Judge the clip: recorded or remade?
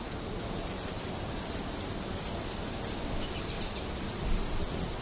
recorded